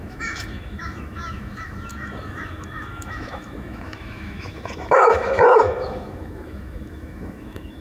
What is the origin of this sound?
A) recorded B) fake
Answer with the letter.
B